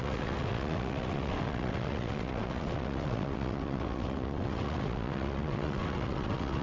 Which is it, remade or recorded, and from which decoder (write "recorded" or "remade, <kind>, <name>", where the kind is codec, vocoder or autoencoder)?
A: remade, vocoder, WaveNeXt